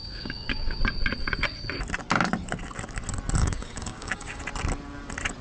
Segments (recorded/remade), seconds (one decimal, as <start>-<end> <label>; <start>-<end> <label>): 0.0-0.8 remade; 0.8-3.4 recorded; 3.4-4.4 remade; 4.4-5.4 recorded